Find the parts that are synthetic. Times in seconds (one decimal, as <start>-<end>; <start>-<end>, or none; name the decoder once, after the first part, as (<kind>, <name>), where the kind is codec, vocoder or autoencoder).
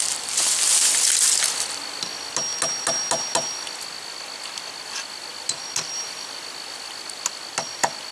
none